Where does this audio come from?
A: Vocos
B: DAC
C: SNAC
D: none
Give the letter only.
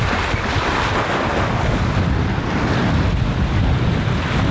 D